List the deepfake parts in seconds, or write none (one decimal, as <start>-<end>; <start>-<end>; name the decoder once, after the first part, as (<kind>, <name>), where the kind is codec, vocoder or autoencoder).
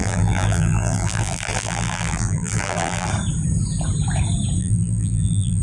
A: 0.0-3.1 (vocoder, BigVGAN v2); 4.6-5.6